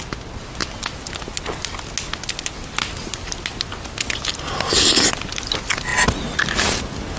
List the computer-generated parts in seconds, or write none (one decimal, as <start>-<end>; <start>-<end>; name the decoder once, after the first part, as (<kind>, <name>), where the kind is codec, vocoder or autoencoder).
none